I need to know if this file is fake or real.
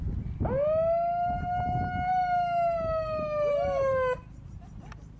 real